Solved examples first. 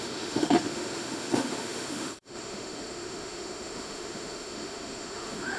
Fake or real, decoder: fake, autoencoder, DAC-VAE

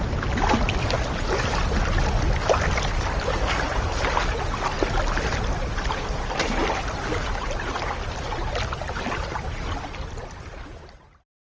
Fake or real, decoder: real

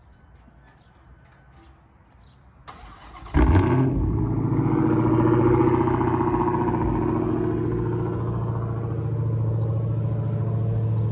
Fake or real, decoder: real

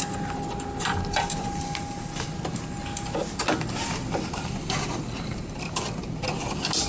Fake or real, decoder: real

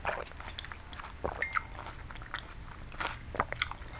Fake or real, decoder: real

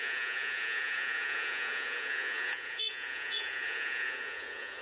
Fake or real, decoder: fake, vocoder, Vocos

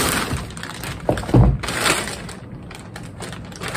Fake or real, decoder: real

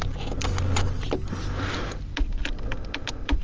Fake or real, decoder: real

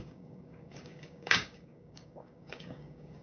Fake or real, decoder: fake, codec, DAC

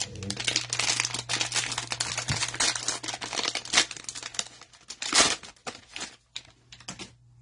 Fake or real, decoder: real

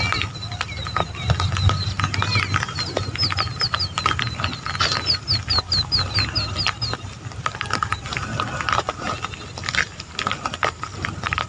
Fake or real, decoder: real